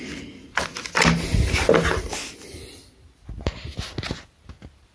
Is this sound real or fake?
real